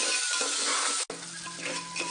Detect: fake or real real